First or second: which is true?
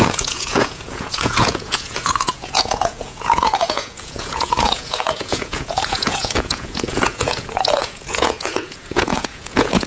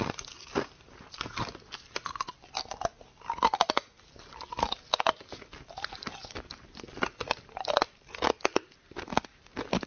second